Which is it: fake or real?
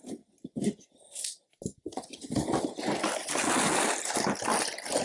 real